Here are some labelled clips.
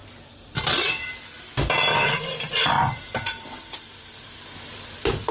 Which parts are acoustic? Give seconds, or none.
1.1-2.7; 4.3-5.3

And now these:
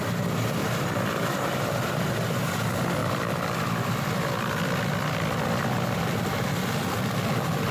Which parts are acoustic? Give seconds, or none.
0.0-0.6; 2.0-3.0